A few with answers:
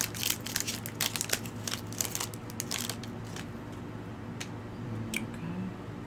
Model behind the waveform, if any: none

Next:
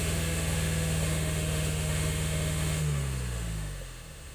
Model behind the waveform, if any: autoencoder, DAC-VAE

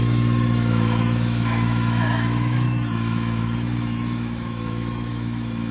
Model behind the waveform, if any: autoencoder, DAC-VAE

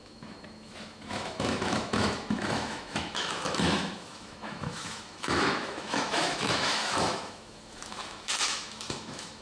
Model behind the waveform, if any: autoencoder, DAC-VAE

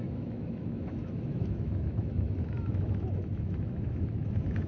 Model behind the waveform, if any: autoencoder, DAC-VAE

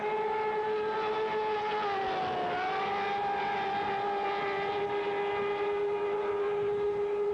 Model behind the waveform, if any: none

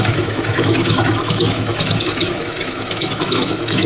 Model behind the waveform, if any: autoencoder, DAC-VAE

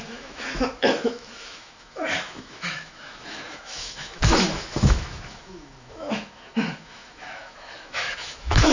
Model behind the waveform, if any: autoencoder, DAC-VAE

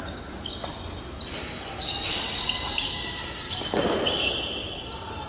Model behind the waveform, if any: none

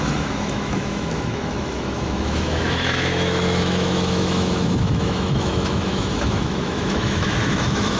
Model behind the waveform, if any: autoencoder, DAC-VAE